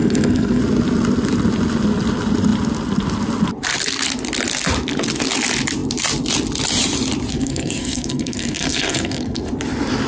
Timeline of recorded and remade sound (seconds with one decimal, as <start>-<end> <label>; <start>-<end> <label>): 0.0-0.6 remade; 0.6-7.3 recorded; 7.3-9.5 remade; 9.5-10.1 recorded